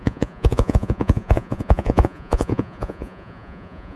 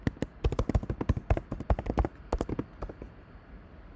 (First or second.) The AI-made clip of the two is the first